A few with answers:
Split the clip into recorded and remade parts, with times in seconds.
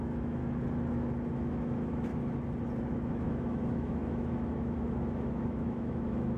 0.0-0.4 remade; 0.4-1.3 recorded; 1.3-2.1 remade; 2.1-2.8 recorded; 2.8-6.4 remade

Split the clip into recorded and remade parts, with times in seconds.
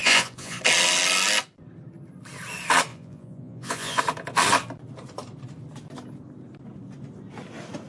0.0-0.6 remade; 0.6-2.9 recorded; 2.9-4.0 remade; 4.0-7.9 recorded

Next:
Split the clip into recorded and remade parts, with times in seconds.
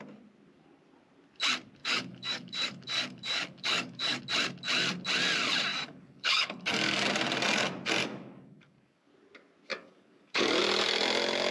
0.0-1.8 recorded; 1.8-4.2 remade; 4.2-5.7 recorded; 5.7-7.1 remade; 7.1-8.0 recorded; 8.0-9.1 remade; 9.1-9.7 recorded; 9.7-10.6 remade; 10.6-11.5 recorded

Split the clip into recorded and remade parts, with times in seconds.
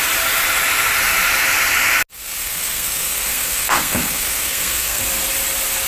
0.0-2.1 recorded; 2.1-5.0 remade; 5.0-5.9 recorded